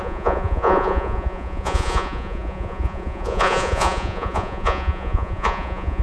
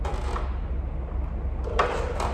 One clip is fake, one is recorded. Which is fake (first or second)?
first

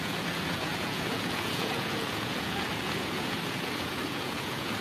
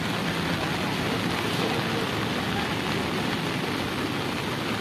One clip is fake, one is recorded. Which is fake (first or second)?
first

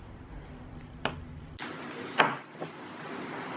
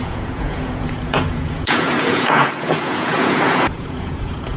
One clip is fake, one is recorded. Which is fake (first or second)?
second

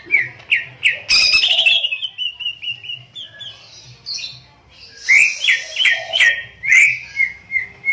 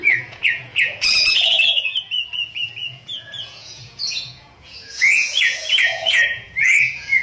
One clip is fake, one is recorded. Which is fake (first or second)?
second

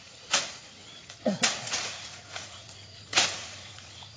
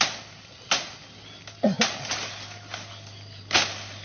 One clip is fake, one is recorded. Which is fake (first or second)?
first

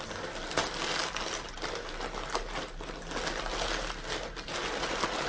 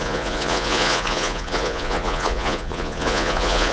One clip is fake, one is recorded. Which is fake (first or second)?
second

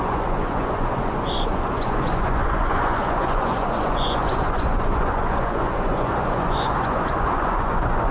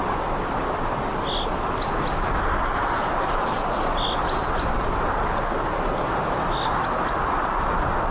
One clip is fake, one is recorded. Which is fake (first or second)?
first